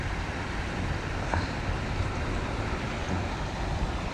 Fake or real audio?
fake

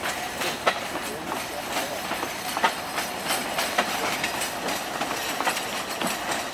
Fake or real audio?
fake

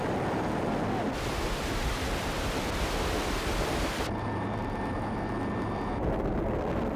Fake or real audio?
fake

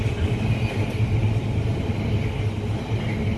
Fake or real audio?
real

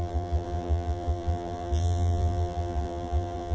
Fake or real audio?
fake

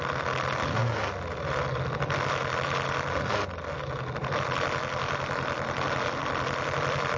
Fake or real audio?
real